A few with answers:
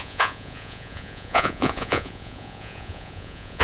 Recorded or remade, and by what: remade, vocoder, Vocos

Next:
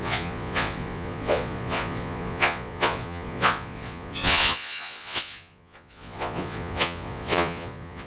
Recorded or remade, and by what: remade, vocoder, Vocos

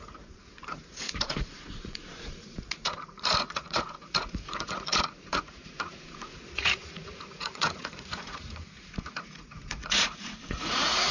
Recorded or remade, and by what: remade, vocoder, Vocos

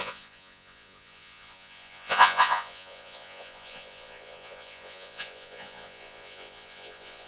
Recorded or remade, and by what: remade, vocoder, Vocos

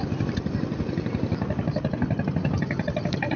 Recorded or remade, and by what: recorded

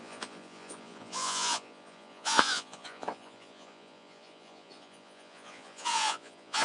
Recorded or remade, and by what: remade, vocoder, Vocos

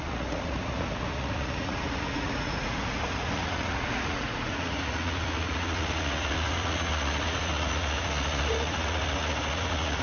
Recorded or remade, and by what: remade, vocoder, Vocos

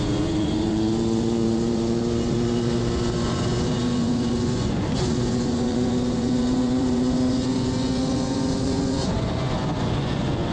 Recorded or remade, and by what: remade, vocoder, Vocos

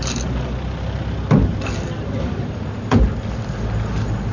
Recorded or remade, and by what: recorded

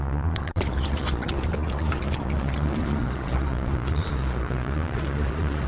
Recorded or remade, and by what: remade, vocoder, Vocos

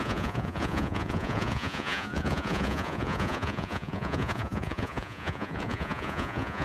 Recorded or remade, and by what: remade, vocoder, Vocos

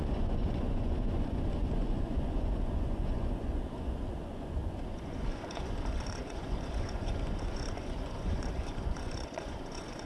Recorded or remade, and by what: remade, vocoder, Vocos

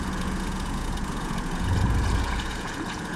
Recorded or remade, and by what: remade, vocoder, Vocos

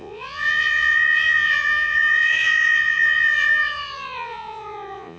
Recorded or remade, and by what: remade, vocoder, Vocos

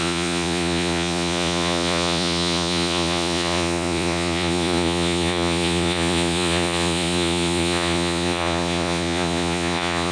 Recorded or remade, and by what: remade, vocoder, Vocos